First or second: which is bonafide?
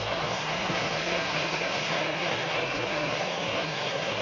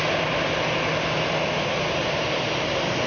second